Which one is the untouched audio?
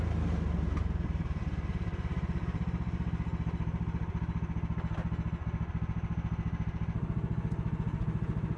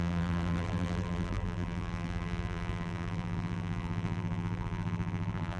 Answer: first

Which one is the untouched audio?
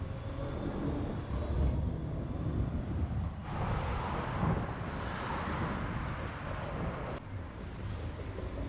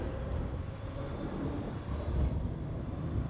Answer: first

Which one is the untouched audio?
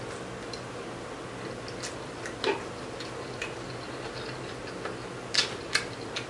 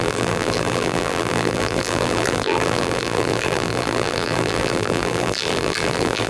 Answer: first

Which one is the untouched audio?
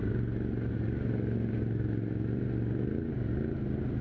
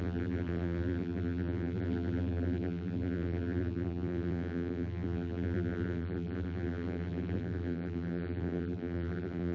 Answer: first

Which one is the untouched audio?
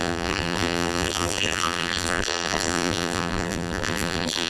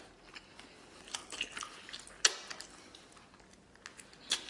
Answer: second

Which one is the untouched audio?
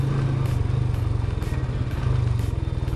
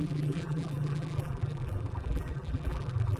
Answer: first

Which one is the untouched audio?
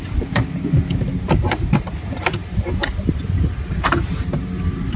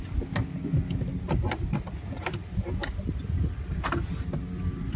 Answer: second